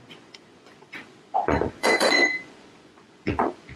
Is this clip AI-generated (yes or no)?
yes